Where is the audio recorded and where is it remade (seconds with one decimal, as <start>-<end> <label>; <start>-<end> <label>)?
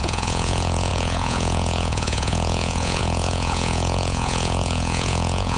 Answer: 0.0-5.6 remade